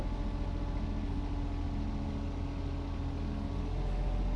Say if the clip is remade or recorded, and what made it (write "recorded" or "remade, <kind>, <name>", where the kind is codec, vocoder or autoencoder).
recorded